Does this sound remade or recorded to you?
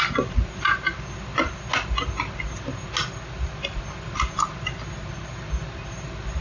recorded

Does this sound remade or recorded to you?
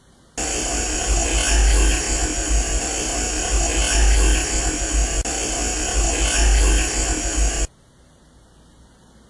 recorded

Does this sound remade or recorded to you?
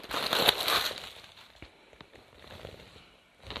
recorded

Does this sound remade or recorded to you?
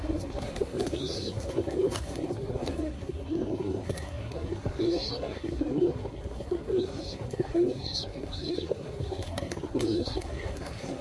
remade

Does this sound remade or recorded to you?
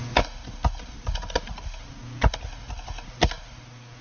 recorded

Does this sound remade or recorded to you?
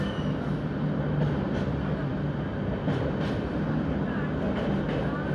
recorded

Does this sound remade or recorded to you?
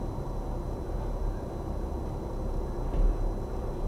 recorded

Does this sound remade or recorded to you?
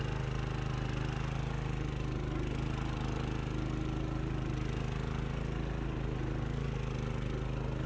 recorded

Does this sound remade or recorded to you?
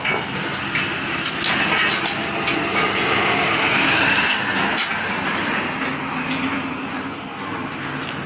recorded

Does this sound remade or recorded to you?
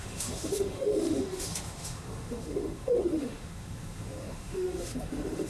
remade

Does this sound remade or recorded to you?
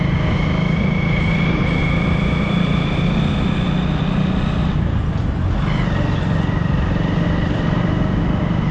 recorded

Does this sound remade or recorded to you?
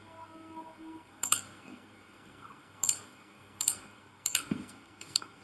remade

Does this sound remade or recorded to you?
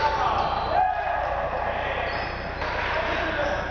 recorded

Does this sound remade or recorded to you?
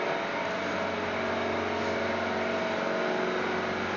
recorded